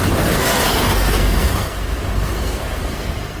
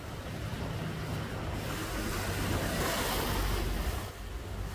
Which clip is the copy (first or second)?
first